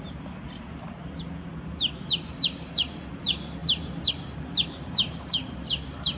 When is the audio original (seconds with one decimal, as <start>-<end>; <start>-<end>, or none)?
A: 3.6-4.1